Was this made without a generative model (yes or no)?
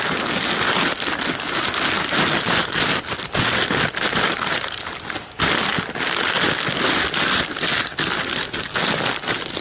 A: yes